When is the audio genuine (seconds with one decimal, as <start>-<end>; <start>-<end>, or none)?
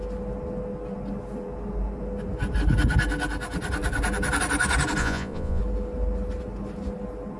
0.0-5.0; 5.6-7.4